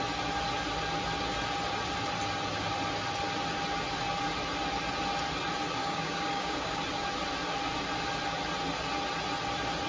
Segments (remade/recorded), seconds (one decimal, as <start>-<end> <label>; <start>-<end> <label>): 0.0-5.8 recorded; 5.8-6.8 remade; 6.8-9.9 recorded

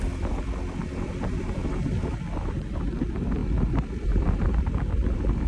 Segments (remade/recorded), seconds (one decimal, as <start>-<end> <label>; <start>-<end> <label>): 0.0-1.6 remade; 1.6-3.0 recorded; 3.0-3.4 remade; 3.4-4.6 recorded; 4.6-5.5 remade

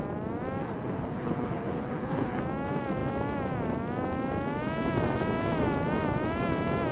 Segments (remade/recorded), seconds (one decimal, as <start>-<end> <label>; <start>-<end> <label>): 0.0-0.6 recorded; 0.6-2.4 remade; 2.4-6.9 recorded

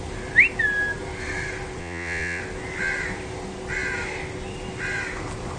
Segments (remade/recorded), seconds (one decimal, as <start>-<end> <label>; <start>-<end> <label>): 0.0-1.8 recorded; 1.8-2.4 remade; 2.4-5.6 recorded

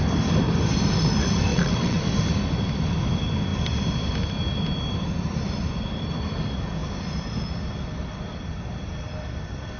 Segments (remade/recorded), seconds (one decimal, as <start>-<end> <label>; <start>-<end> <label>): 0.0-1.5 recorded; 1.5-2.0 remade; 2.0-9.8 recorded